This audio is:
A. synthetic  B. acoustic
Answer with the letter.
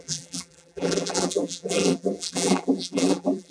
A